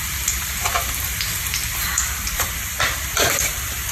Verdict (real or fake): fake